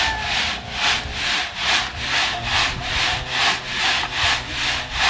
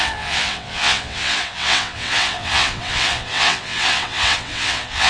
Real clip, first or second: first